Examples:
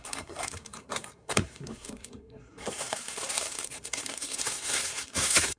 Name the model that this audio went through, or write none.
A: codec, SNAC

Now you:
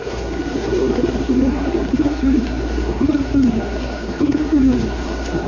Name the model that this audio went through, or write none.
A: codec, SNAC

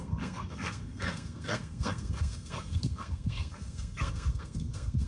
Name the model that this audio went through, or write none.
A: codec, SNAC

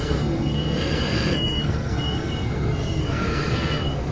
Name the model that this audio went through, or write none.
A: codec, SNAC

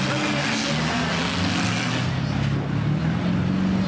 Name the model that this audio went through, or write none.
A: none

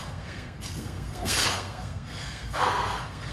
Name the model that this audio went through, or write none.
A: codec, SNAC